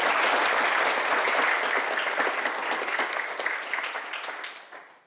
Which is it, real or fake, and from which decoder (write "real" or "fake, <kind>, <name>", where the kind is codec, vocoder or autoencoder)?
real